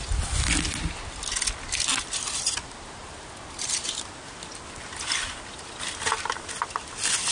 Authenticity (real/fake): real